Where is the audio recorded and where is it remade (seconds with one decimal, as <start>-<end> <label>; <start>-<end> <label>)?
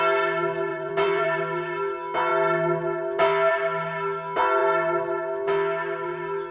0.0-0.7 recorded; 0.7-1.4 remade; 1.4-6.5 recorded